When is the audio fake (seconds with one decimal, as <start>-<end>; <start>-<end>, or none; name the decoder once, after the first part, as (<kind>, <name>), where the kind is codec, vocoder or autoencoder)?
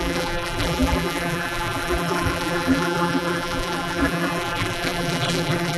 0.0-5.8 (vocoder, BigVGAN v2)